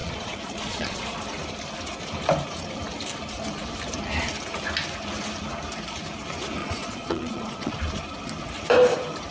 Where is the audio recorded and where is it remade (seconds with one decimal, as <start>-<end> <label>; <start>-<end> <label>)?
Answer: 0.0-1.2 remade; 1.2-6.6 recorded; 6.6-7.7 remade; 7.7-9.3 recorded

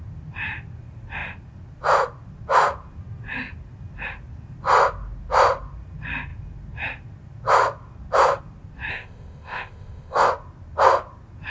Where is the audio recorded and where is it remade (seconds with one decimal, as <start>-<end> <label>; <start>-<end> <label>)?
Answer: 0.0-8.9 recorded; 8.9-10.3 remade; 10.3-11.5 recorded

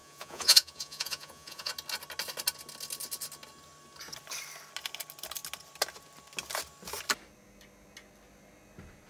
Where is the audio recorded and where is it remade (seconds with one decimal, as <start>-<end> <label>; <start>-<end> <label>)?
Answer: 0.0-1.7 remade; 1.7-9.1 recorded

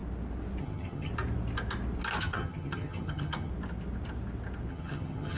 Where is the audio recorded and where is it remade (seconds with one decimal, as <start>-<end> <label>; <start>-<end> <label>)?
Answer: 0.0-0.6 recorded; 0.6-1.1 remade; 1.1-2.2 recorded; 2.2-3.5 remade; 3.5-4.7 recorded; 4.7-5.4 remade

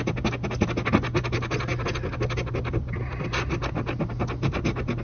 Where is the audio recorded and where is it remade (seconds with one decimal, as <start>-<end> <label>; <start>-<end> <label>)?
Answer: 0.0-5.0 recorded